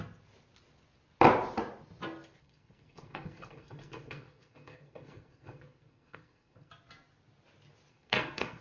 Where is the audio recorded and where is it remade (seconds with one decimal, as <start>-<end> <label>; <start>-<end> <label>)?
0.0-2.4 recorded; 2.4-6.7 remade; 6.7-7.9 recorded; 7.9-8.6 remade